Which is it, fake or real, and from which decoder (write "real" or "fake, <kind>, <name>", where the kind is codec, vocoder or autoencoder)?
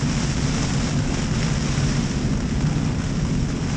real